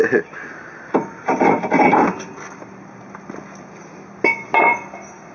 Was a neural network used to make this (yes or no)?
no